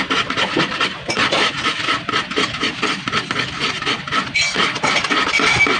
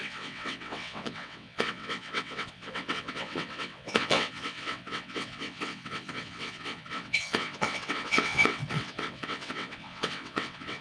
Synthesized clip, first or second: second